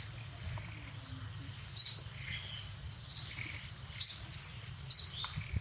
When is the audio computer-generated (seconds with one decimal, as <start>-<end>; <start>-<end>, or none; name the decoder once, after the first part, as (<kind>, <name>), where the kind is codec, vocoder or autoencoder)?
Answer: 1.8-4.5 (vocoder, BigVGAN v2)